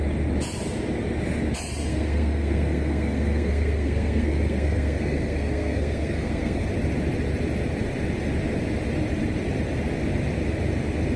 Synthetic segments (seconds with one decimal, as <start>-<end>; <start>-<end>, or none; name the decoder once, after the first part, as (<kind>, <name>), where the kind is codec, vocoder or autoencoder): 1.9-6.7 (codec, SNAC)